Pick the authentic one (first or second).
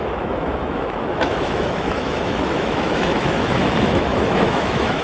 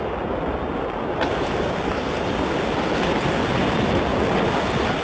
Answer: second